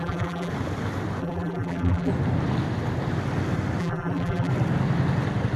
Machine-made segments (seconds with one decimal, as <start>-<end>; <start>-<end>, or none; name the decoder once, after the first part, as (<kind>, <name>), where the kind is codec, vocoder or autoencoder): 0.0-0.5 (vocoder, BigVGAN v2); 1.2-2.1; 3.8-4.5